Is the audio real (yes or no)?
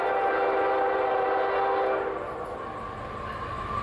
yes